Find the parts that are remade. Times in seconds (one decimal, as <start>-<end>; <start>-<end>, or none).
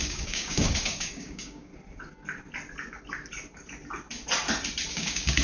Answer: 0.0-1.7; 4.9-5.4